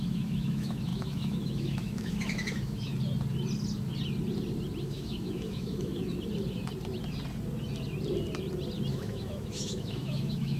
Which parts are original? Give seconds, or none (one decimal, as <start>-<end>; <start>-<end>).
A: 2.9-4.8; 5.9-8.9